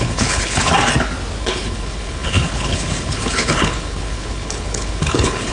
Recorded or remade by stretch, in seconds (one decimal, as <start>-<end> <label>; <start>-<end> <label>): 0.0-0.7 remade; 0.7-1.4 recorded; 1.4-5.5 remade

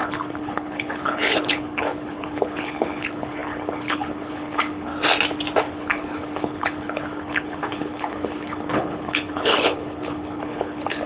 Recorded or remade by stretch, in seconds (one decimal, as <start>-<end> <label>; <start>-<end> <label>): 0.0-4.9 remade; 4.9-5.6 recorded; 5.6-11.1 remade

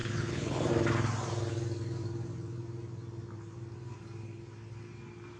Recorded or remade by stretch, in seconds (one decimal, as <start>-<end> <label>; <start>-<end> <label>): 0.0-0.7 remade; 0.7-5.4 recorded

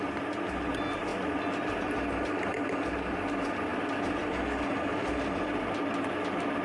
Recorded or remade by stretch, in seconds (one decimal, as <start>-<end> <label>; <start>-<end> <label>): 0.0-6.6 recorded